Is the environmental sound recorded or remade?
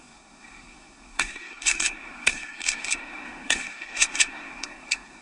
remade